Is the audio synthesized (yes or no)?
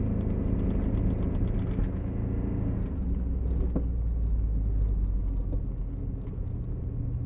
no